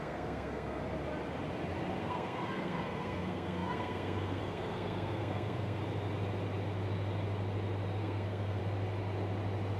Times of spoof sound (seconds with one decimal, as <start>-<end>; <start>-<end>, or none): 0.0-0.8; 2.0-5.8; 8.0-8.6